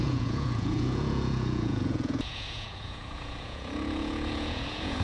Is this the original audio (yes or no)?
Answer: no